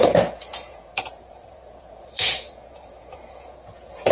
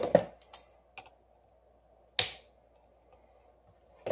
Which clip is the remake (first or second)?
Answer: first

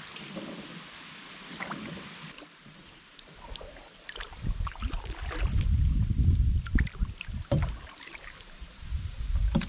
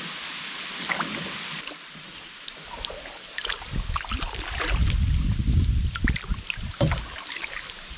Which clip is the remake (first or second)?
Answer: first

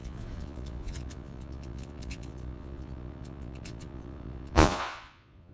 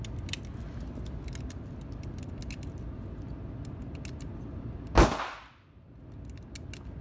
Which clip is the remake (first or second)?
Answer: first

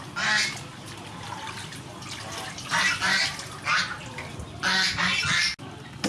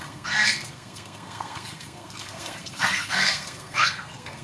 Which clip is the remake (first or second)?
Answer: second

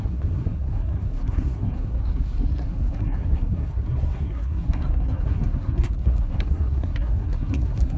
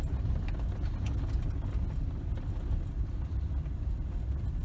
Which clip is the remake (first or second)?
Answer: first